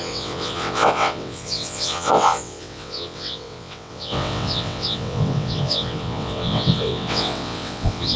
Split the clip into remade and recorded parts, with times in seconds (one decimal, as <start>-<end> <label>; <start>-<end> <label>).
0.0-8.2 remade